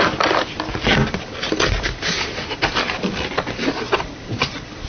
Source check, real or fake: real